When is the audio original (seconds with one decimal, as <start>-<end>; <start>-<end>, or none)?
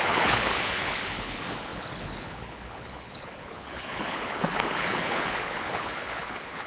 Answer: none